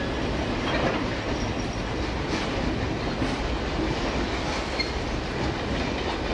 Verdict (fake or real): real